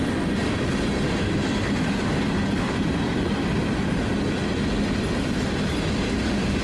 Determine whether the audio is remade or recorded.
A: recorded